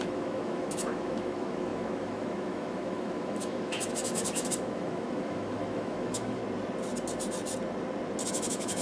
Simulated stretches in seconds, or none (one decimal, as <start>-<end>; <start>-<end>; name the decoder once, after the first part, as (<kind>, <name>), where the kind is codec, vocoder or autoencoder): 0.0-6.4 (autoencoder, DAC-VAE); 8.3-8.8